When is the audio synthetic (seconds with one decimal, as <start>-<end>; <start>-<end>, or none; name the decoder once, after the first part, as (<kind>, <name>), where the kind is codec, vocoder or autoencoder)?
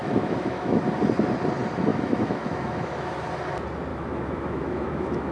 0.0-0.8 (autoencoder, DAC-VAE); 1.9-3.1; 3.9-5.3